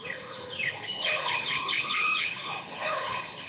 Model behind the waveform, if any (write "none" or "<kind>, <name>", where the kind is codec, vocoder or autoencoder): codec, HILCodec